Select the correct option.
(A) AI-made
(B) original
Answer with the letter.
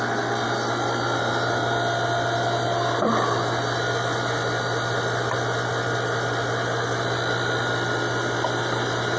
B